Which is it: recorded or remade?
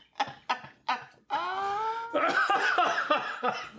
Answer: recorded